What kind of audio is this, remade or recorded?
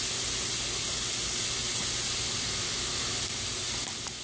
recorded